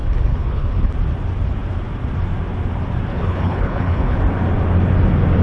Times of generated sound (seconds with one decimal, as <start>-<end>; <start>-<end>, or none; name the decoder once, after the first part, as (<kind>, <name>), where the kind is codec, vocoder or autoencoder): 0.0-0.9 (codec, HILCodec); 3.1-4.2